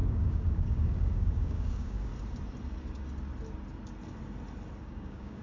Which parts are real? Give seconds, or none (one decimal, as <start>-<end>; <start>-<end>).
2.1-4.8